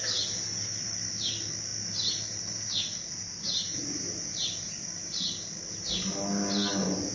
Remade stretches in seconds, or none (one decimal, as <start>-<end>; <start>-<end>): none